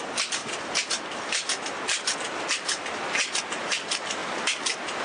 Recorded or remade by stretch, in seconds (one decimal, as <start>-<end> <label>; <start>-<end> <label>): 0.0-5.0 recorded